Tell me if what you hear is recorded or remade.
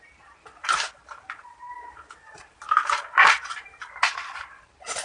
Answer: remade